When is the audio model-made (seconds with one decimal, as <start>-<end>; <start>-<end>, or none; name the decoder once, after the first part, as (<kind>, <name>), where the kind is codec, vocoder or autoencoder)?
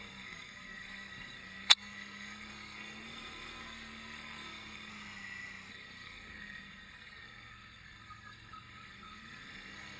0.0-4.9 (codec, SNAC); 5.7-10.0